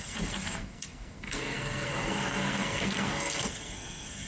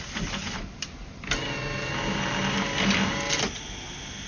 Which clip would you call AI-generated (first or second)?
first